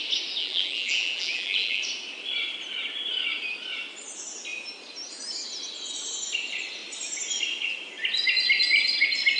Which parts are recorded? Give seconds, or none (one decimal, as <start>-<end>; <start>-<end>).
0.0-0.4; 1.8-9.4